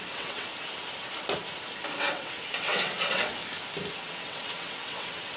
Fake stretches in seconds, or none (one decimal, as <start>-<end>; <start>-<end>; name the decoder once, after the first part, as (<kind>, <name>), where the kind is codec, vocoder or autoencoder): 0.0-0.5 (vocoder, WaveNeXt); 2.0-3.4; 3.9-5.4